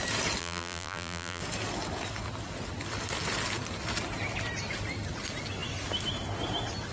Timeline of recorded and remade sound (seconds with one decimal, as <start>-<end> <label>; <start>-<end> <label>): 0.0-0.4 recorded; 0.4-1.4 remade; 1.4-6.9 recorded